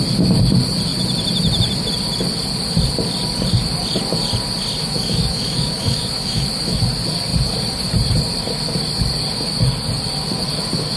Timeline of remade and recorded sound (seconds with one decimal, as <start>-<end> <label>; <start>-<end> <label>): 0.0-4.8 recorded; 4.8-6.8 remade; 6.8-11.0 recorded